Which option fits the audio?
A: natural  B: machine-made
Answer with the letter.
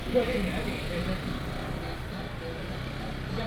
B